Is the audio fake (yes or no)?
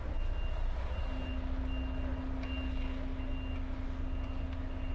no